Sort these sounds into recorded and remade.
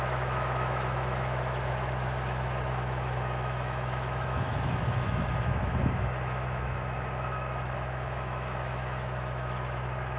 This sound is remade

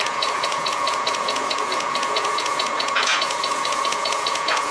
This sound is remade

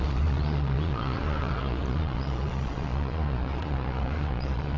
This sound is remade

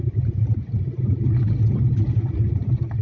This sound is recorded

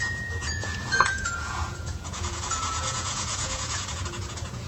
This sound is remade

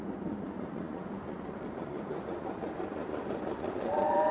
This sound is remade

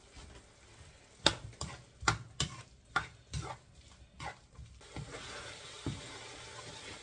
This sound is recorded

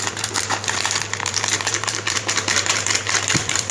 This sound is remade